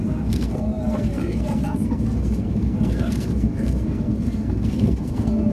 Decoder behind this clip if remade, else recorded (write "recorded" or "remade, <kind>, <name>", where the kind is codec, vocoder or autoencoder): remade, codec, SNAC